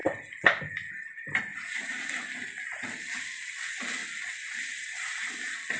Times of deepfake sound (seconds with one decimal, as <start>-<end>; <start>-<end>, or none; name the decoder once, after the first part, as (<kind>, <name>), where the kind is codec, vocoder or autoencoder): 1.5-2.1 (vocoder, Vocos)